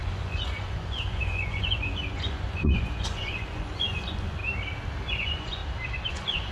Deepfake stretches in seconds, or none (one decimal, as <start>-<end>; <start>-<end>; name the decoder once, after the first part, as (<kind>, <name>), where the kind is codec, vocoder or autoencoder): 0.0-4.4 (vocoder, Vocos); 5.1-5.6; 6.1-6.5